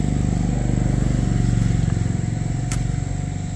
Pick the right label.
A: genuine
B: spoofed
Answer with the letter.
A